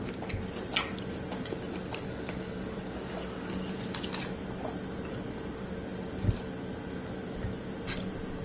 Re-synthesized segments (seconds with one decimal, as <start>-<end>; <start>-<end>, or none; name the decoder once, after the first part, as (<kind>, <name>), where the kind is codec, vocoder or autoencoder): 1.9-3.6 (codec, DAC)